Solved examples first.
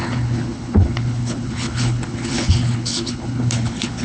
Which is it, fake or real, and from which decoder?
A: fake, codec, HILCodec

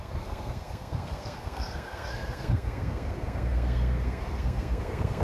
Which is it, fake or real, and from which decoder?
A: fake, codec, SNAC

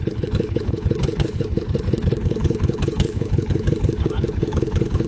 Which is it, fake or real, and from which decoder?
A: fake, codec, HILCodec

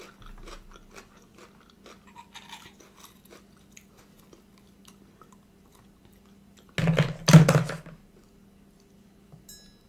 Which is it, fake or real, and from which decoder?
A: real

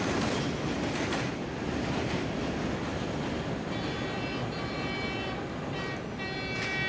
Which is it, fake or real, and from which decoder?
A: real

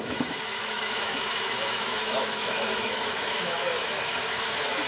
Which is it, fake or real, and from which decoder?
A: fake, autoencoder, DAC-VAE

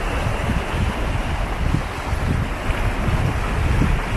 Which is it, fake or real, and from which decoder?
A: real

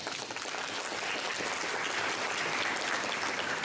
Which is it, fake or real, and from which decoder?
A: real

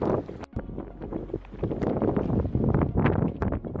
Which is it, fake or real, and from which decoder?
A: real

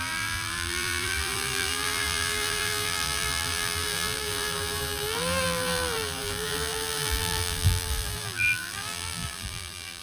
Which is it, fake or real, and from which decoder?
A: fake, vocoder, BigVGAN v2